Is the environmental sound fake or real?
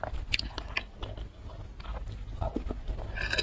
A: real